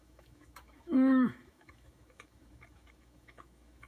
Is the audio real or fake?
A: fake